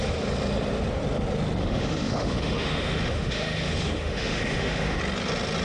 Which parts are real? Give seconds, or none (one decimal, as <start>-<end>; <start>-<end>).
0.0-1.6; 5.0-5.6